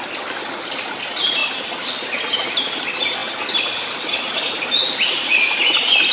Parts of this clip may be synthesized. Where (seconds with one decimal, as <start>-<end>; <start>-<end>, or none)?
none